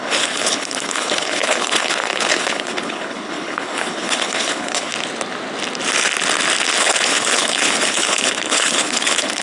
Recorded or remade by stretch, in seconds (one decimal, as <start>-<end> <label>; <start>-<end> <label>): 0.0-4.9 remade; 4.9-6.8 recorded; 6.8-9.4 remade